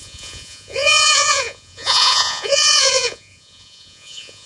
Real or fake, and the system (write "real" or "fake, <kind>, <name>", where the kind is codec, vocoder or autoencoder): fake, vocoder, Vocos